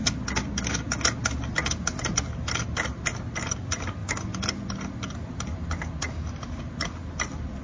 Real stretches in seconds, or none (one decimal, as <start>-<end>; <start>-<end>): 0.0-4.0; 4.7-7.6